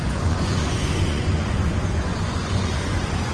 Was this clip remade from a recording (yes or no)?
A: yes